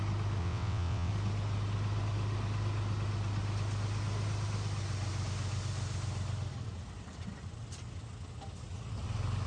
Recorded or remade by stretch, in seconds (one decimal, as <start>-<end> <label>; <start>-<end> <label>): 0.0-0.4 recorded; 0.4-1.1 remade; 1.1-9.5 recorded